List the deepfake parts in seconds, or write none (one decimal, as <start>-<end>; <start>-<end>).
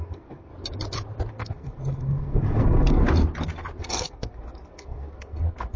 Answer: 0.0-0.5; 1.3-3.0; 3.8-5.8